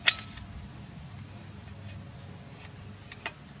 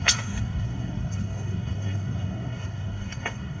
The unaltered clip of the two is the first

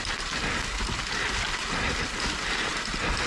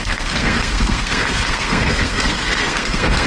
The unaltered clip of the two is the first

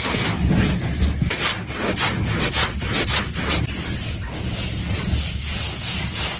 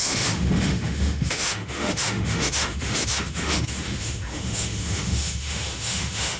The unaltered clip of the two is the first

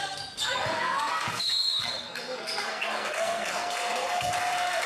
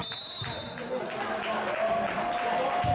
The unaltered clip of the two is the second